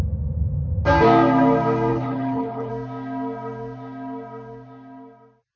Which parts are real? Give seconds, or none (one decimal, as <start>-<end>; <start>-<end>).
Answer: 0.0-1.9; 2.7-5.6